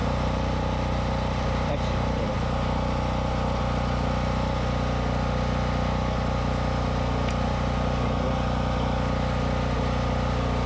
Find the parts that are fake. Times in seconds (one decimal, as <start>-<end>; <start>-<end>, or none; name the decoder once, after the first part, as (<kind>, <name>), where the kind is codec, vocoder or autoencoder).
0.0-2.4 (vocoder, BigVGAN v2)